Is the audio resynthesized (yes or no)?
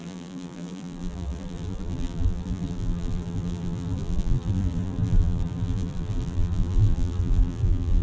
yes